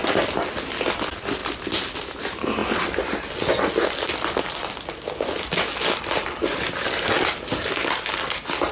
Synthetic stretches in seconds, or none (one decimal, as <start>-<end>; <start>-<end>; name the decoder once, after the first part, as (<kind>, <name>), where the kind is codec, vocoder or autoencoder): none